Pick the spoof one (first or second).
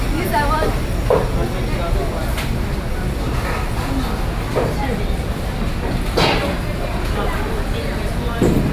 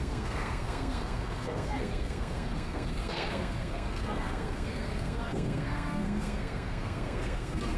second